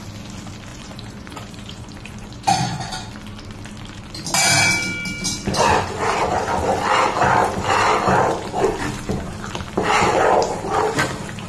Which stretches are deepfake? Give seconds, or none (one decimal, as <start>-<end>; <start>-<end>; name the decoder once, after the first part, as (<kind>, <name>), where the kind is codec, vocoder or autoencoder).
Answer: 0.7-3.1 (vocoder, Vocos)